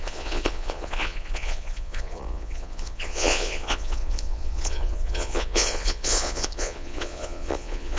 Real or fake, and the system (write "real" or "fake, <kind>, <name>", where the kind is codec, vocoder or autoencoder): fake, vocoder, Vocos